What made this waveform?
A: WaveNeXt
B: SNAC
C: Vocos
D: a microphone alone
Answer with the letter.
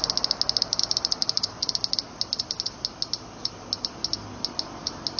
D